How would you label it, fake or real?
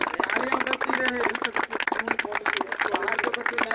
real